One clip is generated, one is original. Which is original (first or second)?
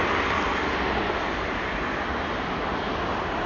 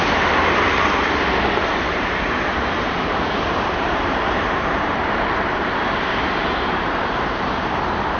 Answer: first